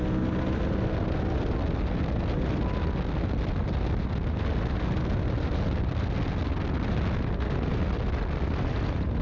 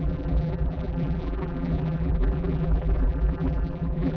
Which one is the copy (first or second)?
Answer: second